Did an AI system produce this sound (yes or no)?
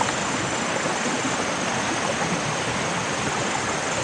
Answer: no